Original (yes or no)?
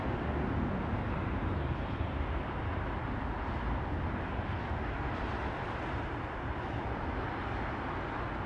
yes